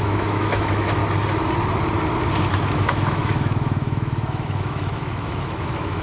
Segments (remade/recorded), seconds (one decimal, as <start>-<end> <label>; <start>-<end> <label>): 0.0-1.0 remade; 1.0-2.5 recorded; 2.5-6.0 remade